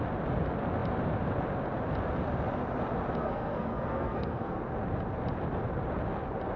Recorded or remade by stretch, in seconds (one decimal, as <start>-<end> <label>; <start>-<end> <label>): 0.0-3.2 recorded; 3.2-4.6 remade; 4.6-6.6 recorded